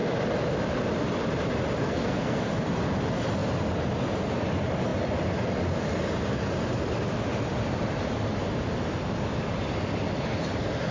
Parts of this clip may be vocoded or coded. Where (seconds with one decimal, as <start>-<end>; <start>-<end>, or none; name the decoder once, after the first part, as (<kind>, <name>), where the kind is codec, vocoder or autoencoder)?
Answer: 1.8-2.5 (codec, SNAC)